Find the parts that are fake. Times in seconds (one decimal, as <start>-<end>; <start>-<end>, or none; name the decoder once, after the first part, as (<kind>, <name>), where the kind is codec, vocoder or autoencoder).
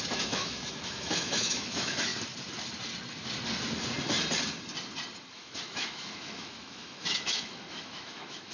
0.0-2.1 (autoencoder, DAC-VAE); 5.3-8.5